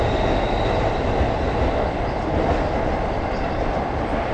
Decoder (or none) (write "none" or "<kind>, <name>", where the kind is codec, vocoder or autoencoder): none